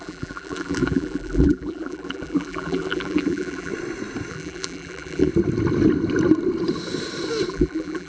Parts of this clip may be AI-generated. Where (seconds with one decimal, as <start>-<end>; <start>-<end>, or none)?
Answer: 0.0-3.7; 4.3-5.3; 7.5-8.1